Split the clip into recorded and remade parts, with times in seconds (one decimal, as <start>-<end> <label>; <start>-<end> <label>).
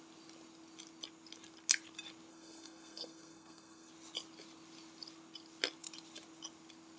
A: 0.0-2.3 recorded; 2.3-3.9 remade; 3.9-7.0 recorded